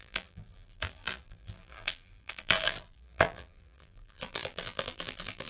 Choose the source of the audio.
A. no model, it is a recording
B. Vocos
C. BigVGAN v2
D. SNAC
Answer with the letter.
C